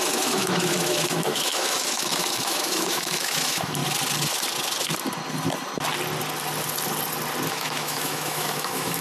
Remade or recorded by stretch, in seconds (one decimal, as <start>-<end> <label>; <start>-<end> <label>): 0.0-3.8 remade; 3.8-7.5 recorded; 7.5-9.0 remade